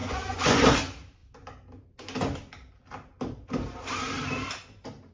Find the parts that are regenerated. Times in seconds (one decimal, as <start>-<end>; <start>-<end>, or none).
0.0-0.6